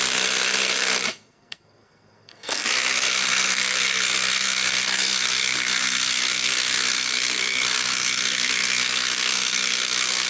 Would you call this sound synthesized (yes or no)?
yes